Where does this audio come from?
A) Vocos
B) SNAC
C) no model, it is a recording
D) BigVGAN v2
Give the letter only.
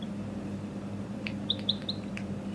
D